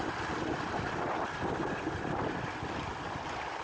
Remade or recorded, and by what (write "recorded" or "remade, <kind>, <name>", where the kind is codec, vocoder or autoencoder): recorded